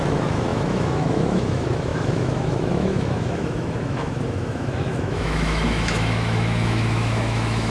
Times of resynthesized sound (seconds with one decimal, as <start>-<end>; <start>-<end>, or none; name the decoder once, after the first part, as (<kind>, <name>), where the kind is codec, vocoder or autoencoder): 0.0-7.7 (autoencoder, DAC-VAE)